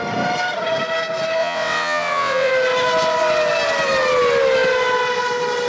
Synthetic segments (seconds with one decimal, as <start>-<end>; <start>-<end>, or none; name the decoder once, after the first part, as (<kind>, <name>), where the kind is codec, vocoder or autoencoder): 1.4-2.5 (vocoder, WaveNeXt)